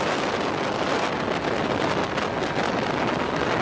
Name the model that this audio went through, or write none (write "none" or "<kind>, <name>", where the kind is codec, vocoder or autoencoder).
none